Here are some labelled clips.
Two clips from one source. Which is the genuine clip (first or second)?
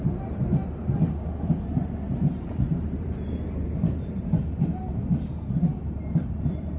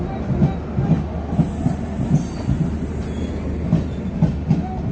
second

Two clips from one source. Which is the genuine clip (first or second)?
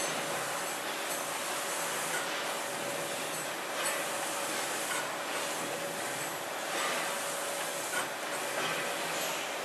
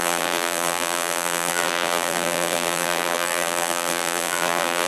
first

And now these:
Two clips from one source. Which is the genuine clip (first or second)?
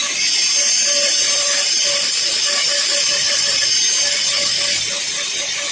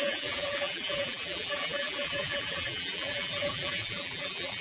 first